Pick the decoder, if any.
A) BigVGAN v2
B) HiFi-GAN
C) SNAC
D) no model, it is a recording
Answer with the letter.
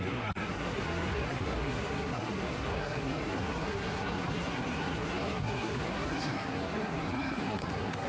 C